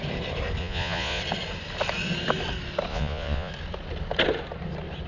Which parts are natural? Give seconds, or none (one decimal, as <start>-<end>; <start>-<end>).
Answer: 0.0-0.6; 1.2-2.9; 3.5-5.1